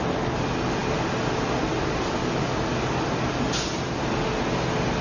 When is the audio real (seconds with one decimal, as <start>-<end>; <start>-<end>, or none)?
0.0-5.0